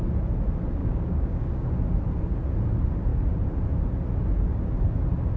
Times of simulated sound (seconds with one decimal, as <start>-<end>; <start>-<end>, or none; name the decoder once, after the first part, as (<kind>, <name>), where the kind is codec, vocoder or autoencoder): 0.8-1.7 (codec, DAC)